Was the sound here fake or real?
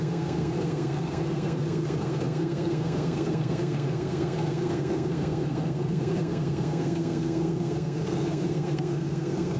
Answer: fake